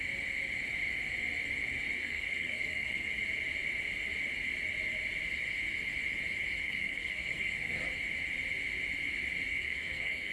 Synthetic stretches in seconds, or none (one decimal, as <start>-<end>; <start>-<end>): 2.0-3.1; 6.6-7.8; 9.5-10.3